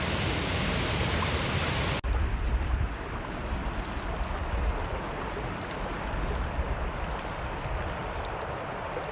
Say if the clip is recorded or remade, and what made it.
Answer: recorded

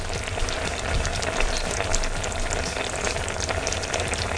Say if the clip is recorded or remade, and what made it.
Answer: recorded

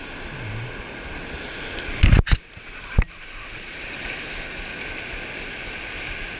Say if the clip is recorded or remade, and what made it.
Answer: recorded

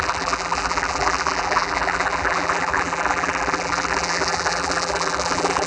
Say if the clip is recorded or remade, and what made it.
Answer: remade, vocoder, BigVGAN v2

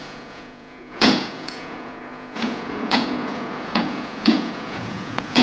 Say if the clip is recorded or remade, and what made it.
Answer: remade, vocoder, Vocos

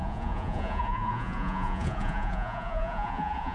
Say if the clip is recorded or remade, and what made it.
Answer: remade, vocoder, Vocos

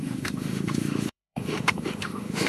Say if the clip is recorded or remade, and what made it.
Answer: remade, autoencoder, DAC-VAE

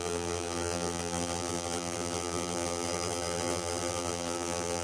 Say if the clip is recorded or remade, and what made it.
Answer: remade, vocoder, BigVGAN v2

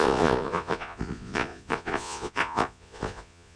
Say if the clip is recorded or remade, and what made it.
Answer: remade, vocoder, Vocos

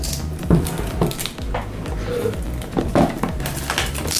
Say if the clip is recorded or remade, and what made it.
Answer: recorded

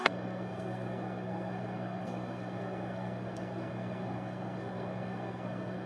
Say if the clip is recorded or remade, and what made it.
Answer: remade, codec, SNAC